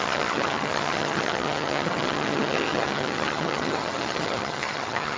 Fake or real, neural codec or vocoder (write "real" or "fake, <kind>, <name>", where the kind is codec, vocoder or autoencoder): fake, vocoder, HiFi-GAN